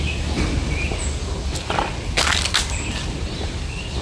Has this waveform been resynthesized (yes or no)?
no